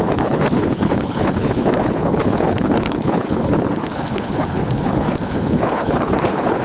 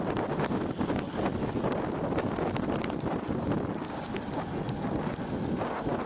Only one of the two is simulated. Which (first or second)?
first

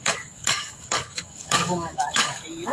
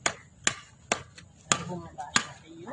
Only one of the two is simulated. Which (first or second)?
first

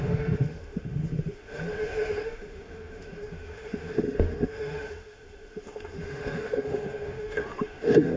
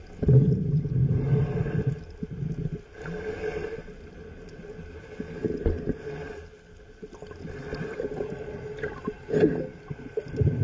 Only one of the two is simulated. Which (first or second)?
first